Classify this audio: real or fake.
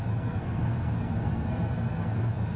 fake